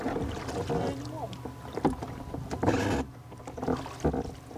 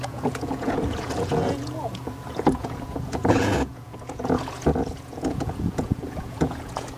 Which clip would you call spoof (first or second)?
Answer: second